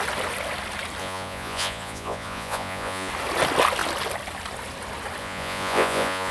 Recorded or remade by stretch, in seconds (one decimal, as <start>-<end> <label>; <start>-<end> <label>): 0.0-1.0 recorded; 1.0-3.1 remade; 3.1-5.2 recorded; 5.2-6.3 remade